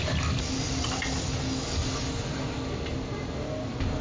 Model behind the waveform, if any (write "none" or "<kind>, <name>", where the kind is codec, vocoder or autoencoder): none